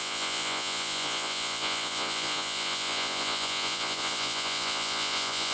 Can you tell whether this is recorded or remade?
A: remade